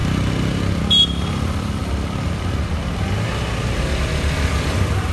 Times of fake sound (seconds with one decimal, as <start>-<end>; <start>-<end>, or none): none